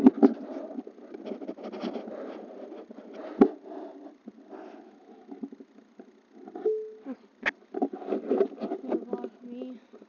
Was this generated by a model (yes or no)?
no